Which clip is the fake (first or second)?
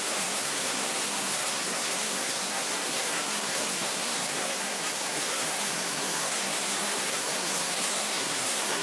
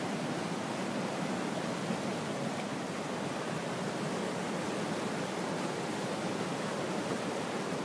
first